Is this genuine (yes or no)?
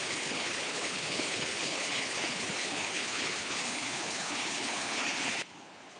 no